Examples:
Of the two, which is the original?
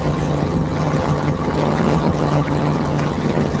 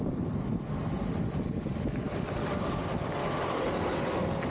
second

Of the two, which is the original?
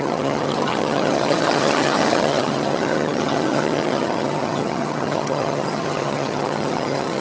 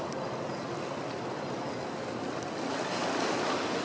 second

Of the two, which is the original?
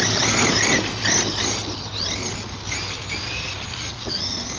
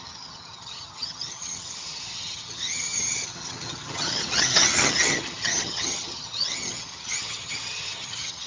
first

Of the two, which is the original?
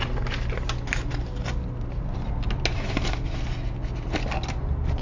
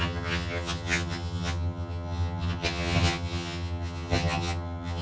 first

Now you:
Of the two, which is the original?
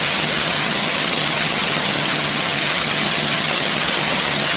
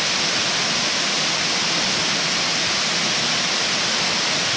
second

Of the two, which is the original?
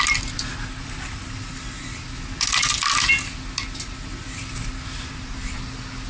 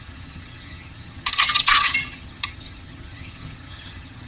first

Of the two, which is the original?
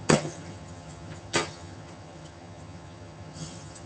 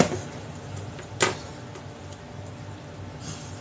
second